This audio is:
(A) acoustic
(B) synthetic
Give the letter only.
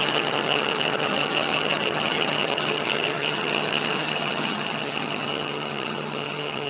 B